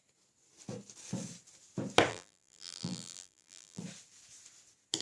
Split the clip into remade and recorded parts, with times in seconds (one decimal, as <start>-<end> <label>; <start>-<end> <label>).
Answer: 0.0-2.1 recorded; 2.1-3.8 remade; 3.8-5.0 recorded